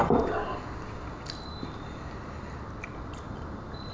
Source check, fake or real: real